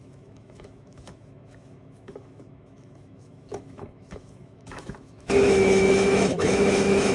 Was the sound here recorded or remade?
remade